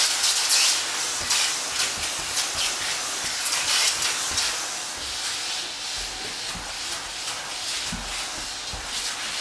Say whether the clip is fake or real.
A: real